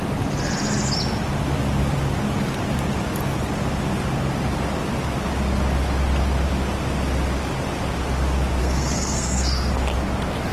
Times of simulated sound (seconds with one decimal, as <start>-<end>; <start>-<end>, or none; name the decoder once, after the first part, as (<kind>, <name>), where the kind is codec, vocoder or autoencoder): 8.6-9.7 (codec, SNAC)